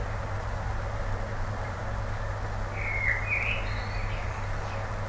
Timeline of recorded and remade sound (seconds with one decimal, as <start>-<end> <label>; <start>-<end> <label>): 0.0-1.8 remade; 1.8-5.1 recorded